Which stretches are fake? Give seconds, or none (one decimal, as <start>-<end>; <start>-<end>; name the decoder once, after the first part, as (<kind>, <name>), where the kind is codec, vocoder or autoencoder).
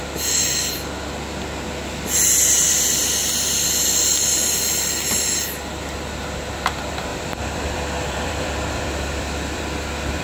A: 7.1-9.6 (vocoder, BigVGAN v2)